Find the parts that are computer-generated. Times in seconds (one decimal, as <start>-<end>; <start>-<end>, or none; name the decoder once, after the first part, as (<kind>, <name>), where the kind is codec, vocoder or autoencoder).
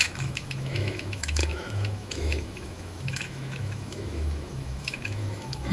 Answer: 0.0-5.7 (autoencoder, DAC-VAE)